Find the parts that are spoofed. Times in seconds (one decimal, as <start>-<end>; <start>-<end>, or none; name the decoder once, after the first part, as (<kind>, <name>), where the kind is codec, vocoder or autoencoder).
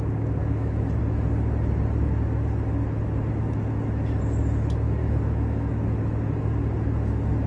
0.4-1.0 (autoencoder, DAC-VAE); 5.0-5.7